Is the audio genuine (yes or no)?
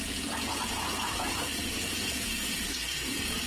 no